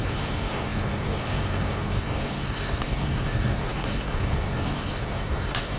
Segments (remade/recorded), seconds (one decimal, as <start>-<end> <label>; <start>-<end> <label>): 0.0-5.8 remade